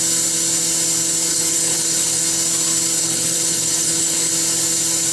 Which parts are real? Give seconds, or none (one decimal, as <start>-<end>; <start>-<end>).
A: 0.0-1.3; 2.2-3.0; 4.3-5.1